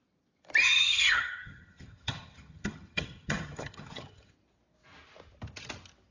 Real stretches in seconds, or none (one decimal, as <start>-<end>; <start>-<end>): 0.0-0.6; 4.3-6.1